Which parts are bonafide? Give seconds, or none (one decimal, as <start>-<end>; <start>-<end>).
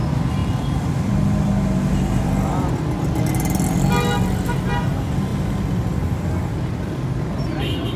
0.0-0.4; 2.7-8.0